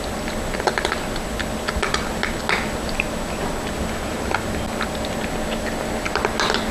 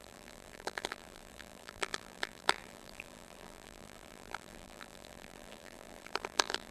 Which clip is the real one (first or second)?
first